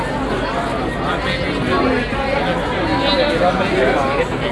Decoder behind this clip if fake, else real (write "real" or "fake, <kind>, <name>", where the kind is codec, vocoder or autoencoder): real